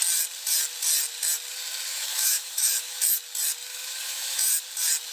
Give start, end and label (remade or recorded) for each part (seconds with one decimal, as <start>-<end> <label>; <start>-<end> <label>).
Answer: 0.0-1.9 recorded; 1.9-3.0 remade; 3.0-3.7 recorded; 3.7-4.5 remade; 4.5-5.1 recorded